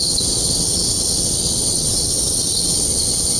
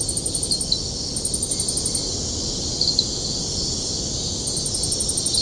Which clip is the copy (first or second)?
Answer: first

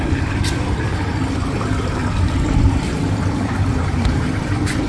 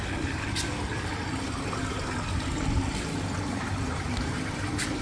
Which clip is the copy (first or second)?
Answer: first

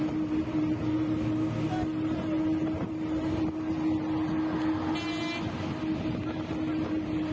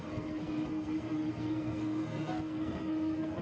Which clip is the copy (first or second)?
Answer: second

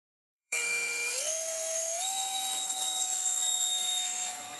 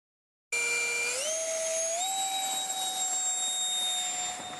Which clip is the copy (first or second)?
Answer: first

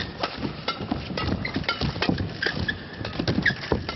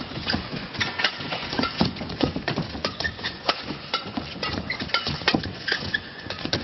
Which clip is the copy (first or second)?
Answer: second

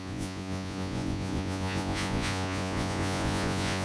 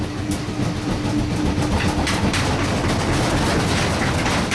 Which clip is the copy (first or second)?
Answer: first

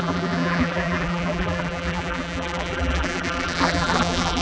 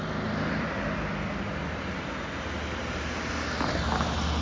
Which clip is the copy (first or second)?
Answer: first